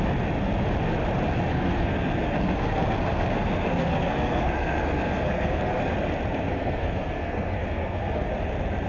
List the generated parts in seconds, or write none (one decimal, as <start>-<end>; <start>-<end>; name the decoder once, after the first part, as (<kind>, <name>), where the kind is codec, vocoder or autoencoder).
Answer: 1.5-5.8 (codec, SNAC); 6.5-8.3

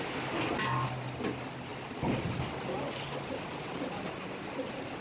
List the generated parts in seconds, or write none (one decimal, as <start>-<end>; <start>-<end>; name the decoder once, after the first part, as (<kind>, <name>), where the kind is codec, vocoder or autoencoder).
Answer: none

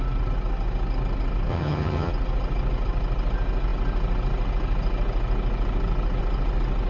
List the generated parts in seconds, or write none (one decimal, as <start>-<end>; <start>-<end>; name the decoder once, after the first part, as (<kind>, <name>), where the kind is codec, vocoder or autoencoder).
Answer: 1.5-2.1 (vocoder, HiFi-GAN)